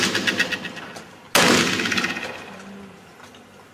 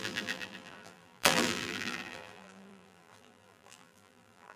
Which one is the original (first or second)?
first